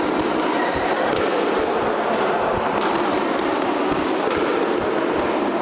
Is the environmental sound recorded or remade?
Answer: recorded